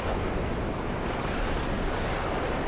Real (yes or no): yes